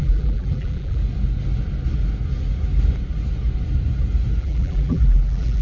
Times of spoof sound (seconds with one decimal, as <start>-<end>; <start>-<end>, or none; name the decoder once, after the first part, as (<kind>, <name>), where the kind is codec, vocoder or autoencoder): 0.0-1.0 (vocoder, BigVGAN v2); 4.4-5.6